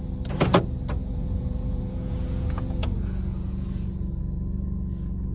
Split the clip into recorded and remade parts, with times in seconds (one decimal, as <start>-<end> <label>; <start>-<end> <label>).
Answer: 0.0-1.0 recorded; 1.0-4.2 remade; 4.2-5.3 recorded